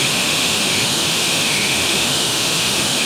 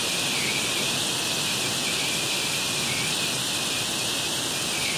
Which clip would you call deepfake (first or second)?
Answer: first